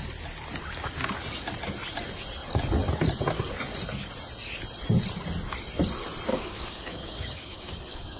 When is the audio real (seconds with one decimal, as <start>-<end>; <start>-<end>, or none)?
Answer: 0.0-6.3